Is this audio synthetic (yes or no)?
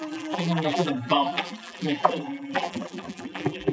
yes